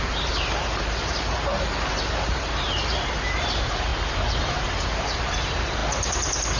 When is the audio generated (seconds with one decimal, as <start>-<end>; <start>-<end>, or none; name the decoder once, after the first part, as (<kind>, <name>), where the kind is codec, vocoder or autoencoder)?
0.0-3.9 (vocoder, BigVGAN v2); 4.4-6.6